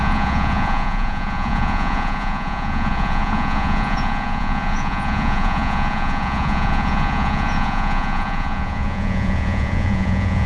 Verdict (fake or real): fake